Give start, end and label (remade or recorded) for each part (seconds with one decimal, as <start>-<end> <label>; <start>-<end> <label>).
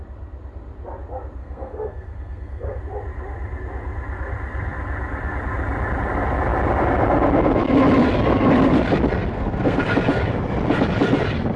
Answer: 0.0-1.4 recorded; 1.4-2.8 remade; 2.8-9.3 recorded; 9.3-9.8 remade; 9.8-11.6 recorded